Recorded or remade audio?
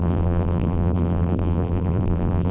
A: remade